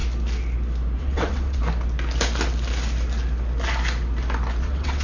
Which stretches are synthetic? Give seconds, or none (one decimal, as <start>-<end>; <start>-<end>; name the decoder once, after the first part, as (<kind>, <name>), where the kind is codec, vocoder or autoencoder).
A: 1.0-1.6 (vocoder, WaveNeXt); 4.6-5.0